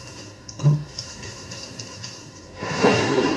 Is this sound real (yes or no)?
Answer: no